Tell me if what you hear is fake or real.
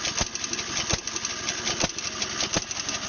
real